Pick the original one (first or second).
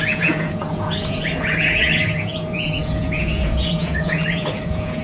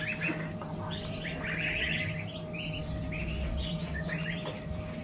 second